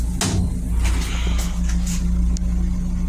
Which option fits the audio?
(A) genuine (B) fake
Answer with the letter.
A